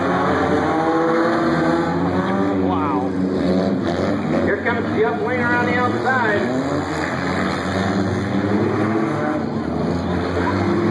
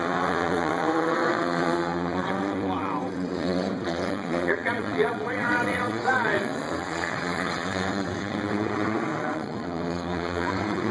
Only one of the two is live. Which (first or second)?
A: first